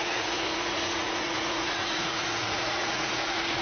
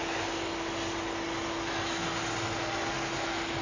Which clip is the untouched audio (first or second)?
second